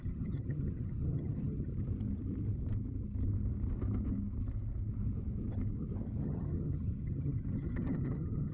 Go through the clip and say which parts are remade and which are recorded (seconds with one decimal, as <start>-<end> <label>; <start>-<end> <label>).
0.0-1.7 remade; 1.7-6.2 recorded; 6.2-8.5 remade